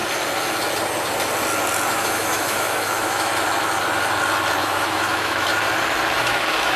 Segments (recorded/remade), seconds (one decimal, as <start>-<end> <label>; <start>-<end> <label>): 0.0-1.9 recorded; 1.9-3.3 remade; 3.3-4.6 recorded; 4.6-5.5 remade; 5.5-6.2 recorded; 6.2-6.8 remade